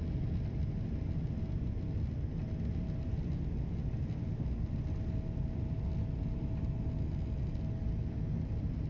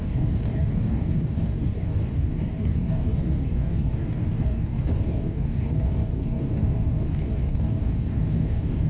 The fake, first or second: second